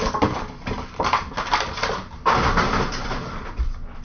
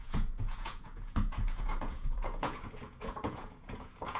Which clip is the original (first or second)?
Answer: first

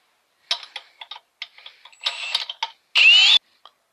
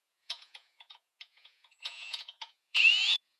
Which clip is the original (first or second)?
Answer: first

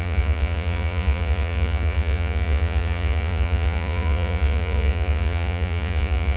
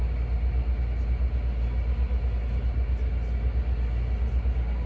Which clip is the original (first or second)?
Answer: second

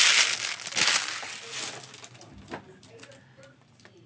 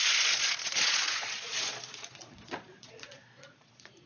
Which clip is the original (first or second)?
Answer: first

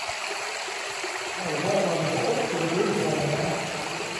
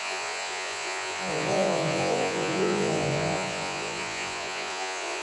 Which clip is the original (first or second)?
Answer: first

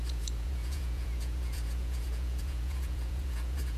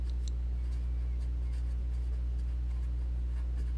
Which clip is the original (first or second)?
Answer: second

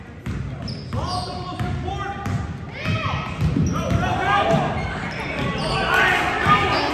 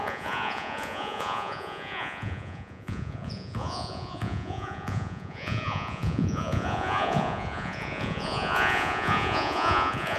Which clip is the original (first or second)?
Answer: first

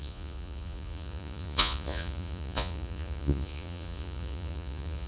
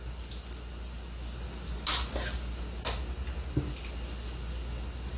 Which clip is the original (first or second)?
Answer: second